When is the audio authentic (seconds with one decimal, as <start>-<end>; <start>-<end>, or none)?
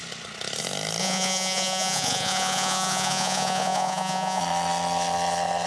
0.0-1.0; 4.4-5.7